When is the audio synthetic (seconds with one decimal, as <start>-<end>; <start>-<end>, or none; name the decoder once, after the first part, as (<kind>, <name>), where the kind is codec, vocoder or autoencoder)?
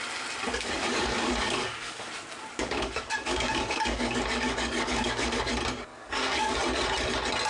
0.5-2.1 (codec, DAC); 2.6-5.5; 5.9-6.6